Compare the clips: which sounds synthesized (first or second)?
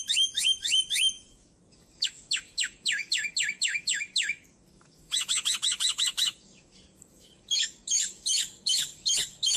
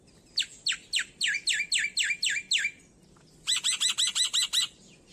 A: first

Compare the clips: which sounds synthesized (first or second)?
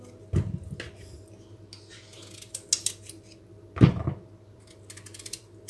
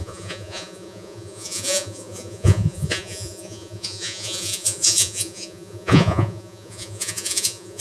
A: second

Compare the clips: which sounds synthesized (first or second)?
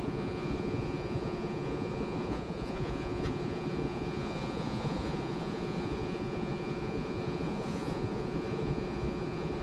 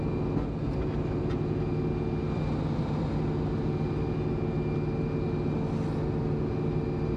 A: first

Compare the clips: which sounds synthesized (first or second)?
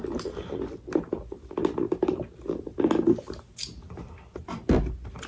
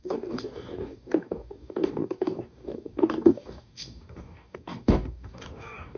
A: second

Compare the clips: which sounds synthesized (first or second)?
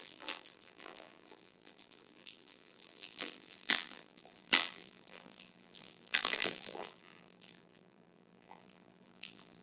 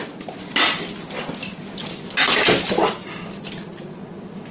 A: first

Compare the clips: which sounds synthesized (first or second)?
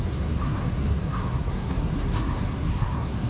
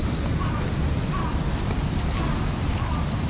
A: first